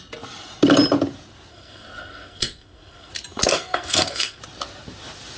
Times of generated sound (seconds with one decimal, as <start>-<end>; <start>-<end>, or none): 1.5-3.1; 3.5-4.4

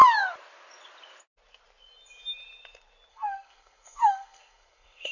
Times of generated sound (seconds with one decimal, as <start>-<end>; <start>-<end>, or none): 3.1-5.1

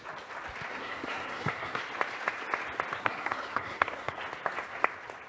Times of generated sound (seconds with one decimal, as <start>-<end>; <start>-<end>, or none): 0.7-1.8; 3.0-4.2

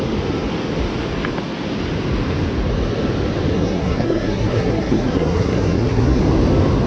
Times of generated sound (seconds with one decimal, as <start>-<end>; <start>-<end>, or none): 3.5-6.2

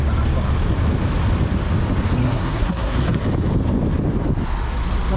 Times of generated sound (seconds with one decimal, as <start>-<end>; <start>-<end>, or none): 2.2-3.2